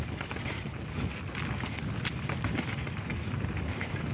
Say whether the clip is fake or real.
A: real